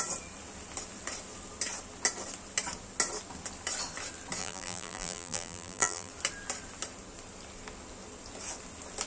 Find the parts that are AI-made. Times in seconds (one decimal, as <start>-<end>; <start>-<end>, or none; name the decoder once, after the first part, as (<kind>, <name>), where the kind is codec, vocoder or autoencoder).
4.4-6.1 (vocoder, BigVGAN v2)